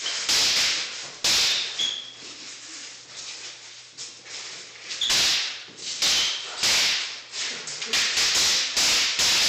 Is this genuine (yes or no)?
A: yes